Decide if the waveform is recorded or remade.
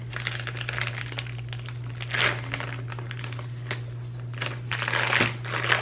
recorded